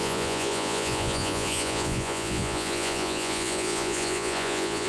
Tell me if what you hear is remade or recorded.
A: remade